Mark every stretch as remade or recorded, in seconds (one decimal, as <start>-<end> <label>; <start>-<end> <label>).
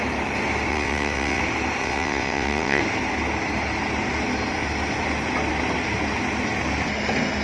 0.0-0.7 recorded; 0.7-1.4 remade; 1.4-1.8 recorded; 1.8-2.8 remade; 2.8-7.4 recorded